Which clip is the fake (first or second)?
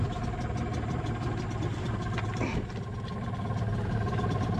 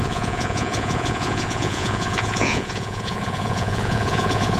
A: second